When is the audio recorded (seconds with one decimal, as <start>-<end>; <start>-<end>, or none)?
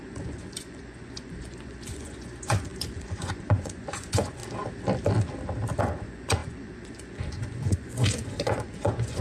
4.4-5.8